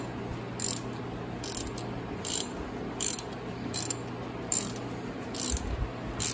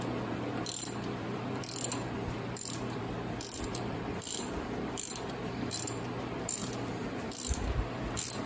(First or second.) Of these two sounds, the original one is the first